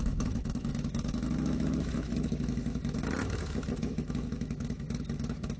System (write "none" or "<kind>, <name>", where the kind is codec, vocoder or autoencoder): autoencoder, DAC-VAE